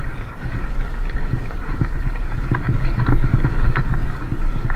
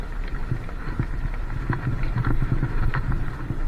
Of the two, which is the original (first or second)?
second